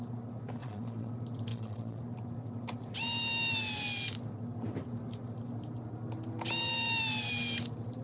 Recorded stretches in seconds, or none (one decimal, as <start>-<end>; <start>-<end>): 0.0-0.6; 1.1-1.5; 2.0-8.0